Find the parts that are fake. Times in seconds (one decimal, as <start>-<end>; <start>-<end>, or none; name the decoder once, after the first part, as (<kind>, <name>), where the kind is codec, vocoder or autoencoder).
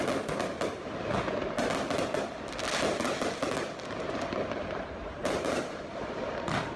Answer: 5.2-6.3 (vocoder, BigVGAN v2)